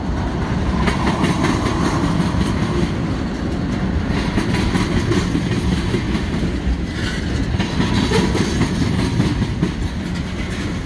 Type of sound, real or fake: real